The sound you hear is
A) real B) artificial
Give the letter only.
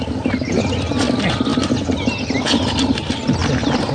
A